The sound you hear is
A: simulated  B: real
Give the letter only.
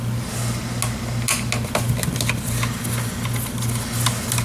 B